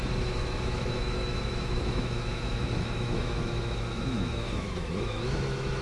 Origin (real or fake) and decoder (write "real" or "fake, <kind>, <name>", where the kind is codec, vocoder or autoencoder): fake, autoencoder, DAC-VAE